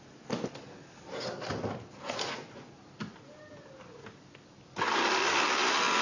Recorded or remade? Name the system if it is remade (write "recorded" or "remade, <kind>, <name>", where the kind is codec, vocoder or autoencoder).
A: recorded